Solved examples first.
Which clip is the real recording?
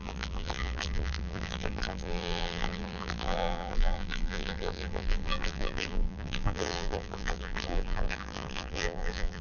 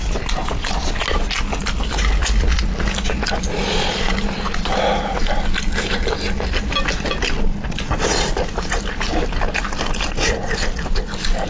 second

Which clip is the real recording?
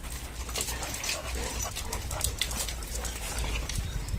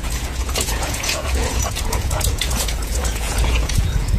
first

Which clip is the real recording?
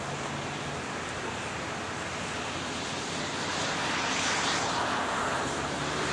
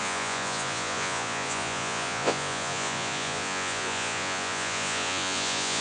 first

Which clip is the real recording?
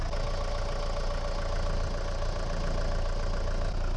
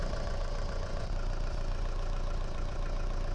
first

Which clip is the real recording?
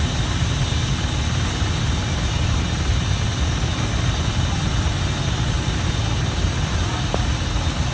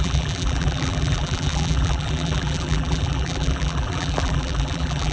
first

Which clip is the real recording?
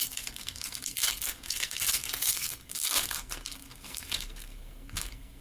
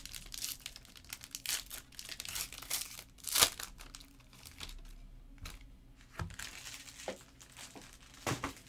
second